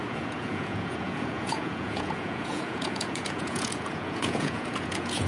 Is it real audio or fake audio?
fake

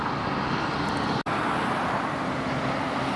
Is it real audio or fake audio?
real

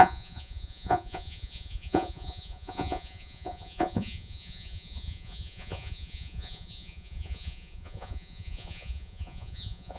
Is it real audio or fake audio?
fake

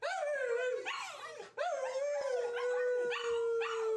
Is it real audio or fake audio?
real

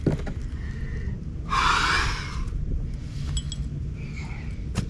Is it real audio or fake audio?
real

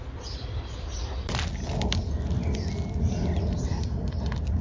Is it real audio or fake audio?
real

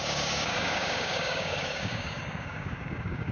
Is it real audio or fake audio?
fake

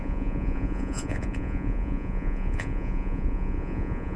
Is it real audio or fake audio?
fake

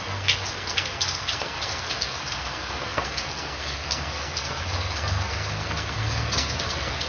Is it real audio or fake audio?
fake